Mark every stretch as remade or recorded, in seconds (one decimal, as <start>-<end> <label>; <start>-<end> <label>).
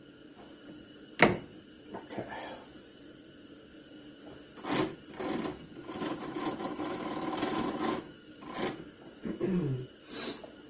0.0-5.5 recorded; 5.5-8.4 remade; 8.4-10.7 recorded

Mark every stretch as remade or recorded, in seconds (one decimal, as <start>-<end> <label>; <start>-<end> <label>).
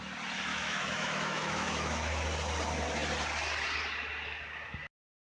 0.0-0.5 recorded; 0.5-2.1 remade; 2.1-5.2 recorded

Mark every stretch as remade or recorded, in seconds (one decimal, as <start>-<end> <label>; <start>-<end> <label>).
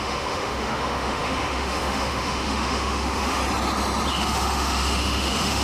0.0-3.4 remade; 3.4-4.1 recorded; 4.1-5.6 remade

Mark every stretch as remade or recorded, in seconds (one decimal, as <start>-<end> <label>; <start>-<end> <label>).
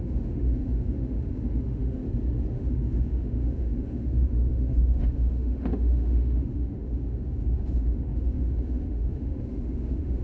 0.0-2.0 remade; 2.0-2.5 recorded; 2.5-10.2 remade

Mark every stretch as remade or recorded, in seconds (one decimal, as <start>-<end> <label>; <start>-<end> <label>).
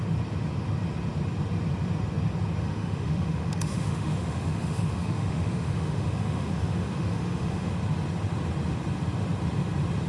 0.0-2.6 recorded; 2.6-7.7 remade; 7.7-10.1 recorded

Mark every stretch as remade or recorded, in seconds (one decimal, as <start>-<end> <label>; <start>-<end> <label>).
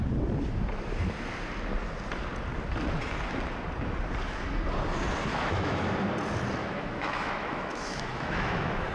0.0-5.3 recorded; 5.3-5.9 remade; 5.9-6.6 recorded; 6.6-8.9 remade